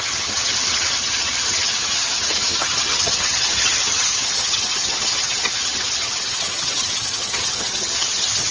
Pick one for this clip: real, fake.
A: fake